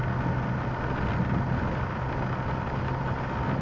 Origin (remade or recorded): recorded